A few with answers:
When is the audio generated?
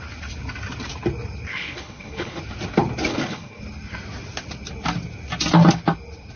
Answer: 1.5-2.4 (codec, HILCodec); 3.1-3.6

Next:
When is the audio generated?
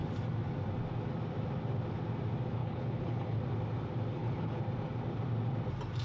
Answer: 2.6-3.4 (codec, HILCodec); 4.1-4.6